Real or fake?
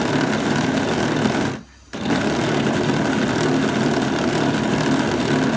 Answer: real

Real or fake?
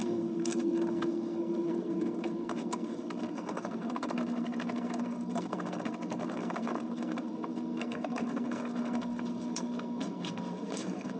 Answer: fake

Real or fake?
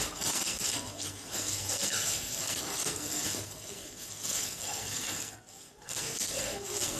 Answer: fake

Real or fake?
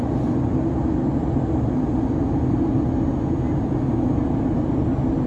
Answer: real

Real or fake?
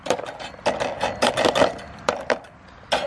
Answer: real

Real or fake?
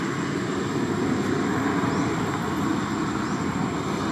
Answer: real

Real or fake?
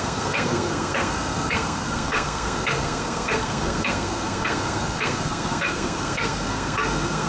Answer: fake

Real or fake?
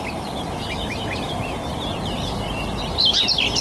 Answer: real